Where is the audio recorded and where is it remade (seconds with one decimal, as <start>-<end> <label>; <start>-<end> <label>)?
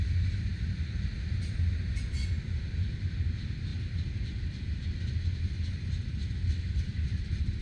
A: 0.0-3.7 recorded; 3.7-5.0 remade; 5.0-6.2 recorded; 6.2-7.6 remade